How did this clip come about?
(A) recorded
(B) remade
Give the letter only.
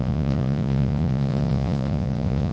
B